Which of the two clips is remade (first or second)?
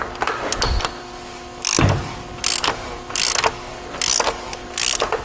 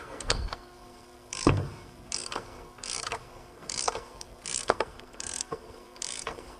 second